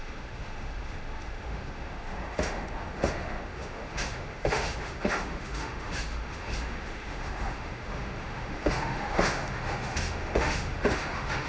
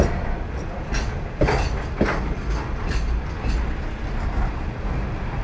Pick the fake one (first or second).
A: first